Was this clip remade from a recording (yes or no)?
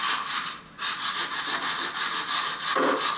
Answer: no